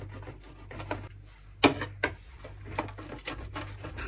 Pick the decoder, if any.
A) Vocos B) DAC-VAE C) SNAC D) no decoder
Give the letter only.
D